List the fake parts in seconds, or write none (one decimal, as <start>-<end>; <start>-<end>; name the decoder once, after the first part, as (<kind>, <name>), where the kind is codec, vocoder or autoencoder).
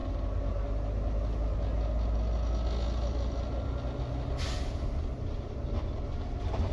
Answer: none